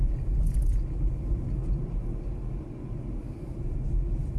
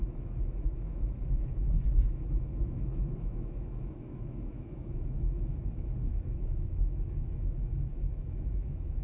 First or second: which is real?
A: first